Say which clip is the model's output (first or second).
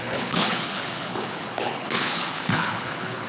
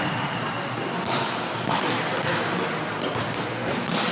first